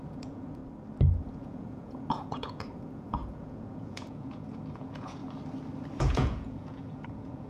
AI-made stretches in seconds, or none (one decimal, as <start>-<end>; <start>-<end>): 0.0-0.6; 1.2-5.2; 6.0-7.5